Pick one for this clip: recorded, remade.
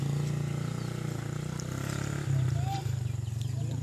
recorded